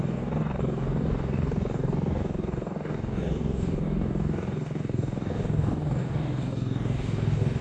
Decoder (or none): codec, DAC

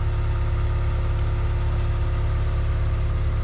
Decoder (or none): none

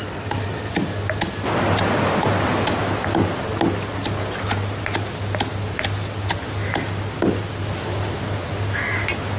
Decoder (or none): none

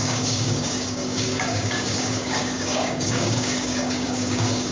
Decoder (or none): codec, DAC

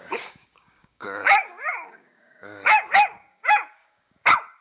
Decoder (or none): codec, DAC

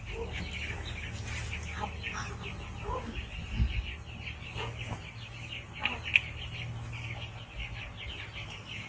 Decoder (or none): none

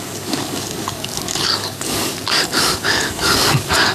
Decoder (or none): codec, DAC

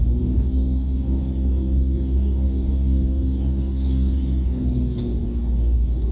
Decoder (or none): codec, DAC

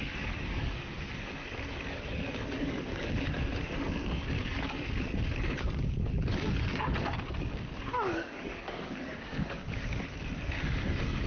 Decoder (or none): codec, DAC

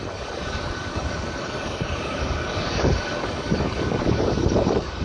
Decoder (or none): codec, DAC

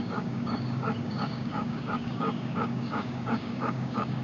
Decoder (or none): codec, DAC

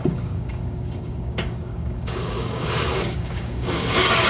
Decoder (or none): codec, DAC